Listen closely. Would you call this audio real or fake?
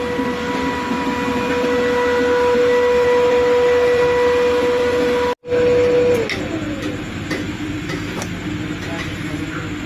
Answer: real